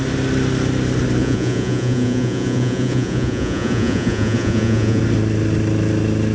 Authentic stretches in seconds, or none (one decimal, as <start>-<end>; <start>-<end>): 0.0-1.2; 5.0-6.3